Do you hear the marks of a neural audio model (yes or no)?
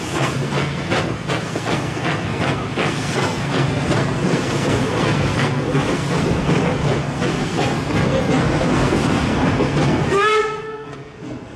yes